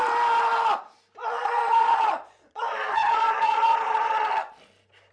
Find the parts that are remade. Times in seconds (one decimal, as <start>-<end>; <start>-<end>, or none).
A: 1.2-4.3